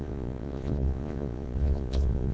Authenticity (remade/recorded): remade